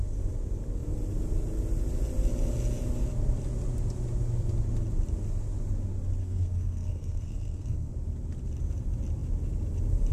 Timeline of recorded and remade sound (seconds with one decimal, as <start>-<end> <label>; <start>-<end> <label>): 0.0-6.2 recorded; 6.2-7.9 remade; 7.9-10.1 recorded